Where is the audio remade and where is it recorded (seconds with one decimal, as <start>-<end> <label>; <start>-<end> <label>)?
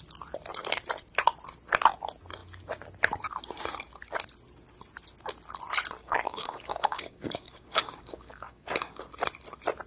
0.0-6.0 recorded; 6.0-9.0 remade; 9.0-9.9 recorded